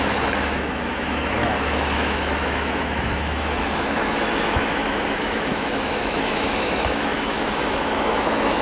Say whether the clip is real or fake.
fake